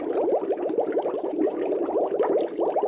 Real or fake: real